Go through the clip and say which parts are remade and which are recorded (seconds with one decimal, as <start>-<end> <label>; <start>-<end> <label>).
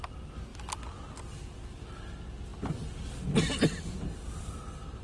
0.0-5.0 recorded